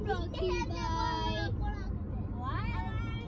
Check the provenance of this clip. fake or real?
real